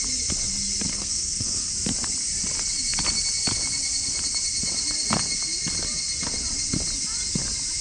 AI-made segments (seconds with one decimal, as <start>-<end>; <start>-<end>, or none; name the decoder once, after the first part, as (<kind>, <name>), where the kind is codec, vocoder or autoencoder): 0.9-1.7 (codec, SNAC)